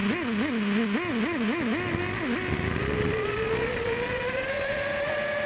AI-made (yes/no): no